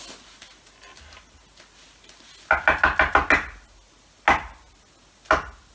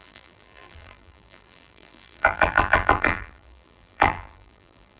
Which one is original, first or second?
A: first